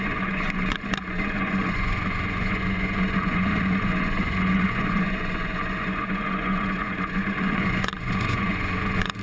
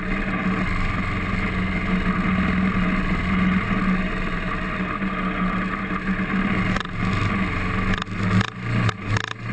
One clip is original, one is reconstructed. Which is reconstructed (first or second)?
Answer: first